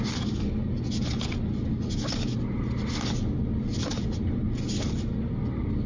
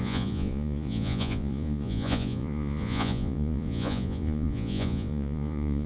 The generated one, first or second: second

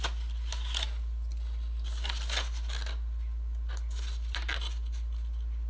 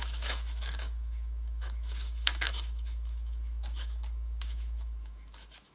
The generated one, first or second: second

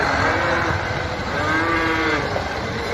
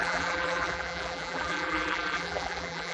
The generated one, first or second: second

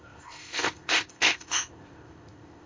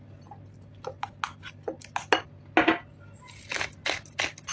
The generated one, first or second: first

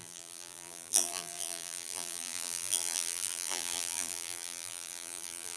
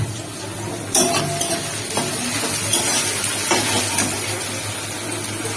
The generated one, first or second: first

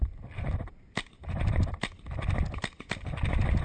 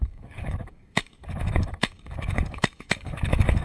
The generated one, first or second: second